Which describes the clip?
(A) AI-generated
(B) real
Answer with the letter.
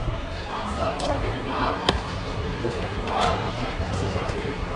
A